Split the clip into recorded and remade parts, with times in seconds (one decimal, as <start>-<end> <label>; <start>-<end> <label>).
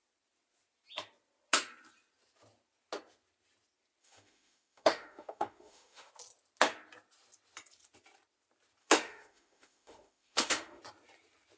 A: 0.0-4.0 recorded; 4.0-6.1 remade; 6.1-8.8 recorded; 8.8-10.8 remade; 10.8-11.6 recorded